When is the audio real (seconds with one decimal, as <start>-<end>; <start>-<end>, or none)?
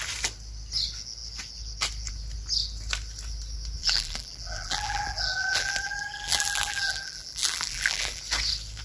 0.0-3.8; 8.2-8.8